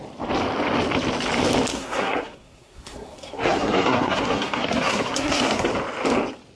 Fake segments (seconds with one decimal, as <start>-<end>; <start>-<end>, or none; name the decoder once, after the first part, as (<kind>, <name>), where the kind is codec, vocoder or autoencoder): 1.7-5.7 (codec, SNAC)